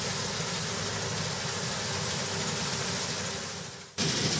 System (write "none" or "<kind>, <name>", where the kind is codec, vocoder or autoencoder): none